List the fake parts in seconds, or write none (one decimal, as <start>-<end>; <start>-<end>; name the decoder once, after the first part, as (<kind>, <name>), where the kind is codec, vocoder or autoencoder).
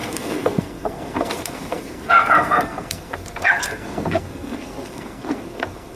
0.0-6.0 (codec, SNAC)